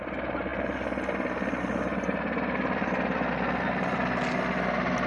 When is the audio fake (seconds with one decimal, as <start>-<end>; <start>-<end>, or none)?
none